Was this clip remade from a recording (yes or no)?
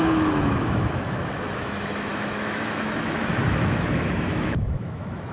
yes